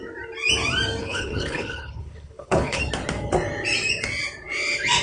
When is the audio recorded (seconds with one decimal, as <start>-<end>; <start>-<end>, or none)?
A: 0.0-1.0; 2.8-5.0